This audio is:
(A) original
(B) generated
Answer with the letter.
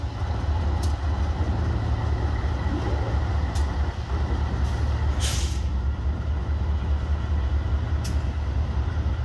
A